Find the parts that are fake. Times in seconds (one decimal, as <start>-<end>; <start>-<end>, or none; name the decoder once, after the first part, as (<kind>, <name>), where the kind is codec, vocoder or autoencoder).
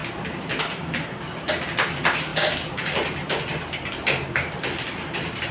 none